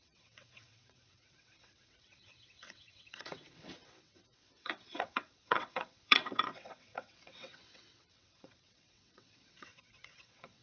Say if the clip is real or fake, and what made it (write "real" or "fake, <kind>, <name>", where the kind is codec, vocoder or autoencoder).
fake, vocoder, WaveNeXt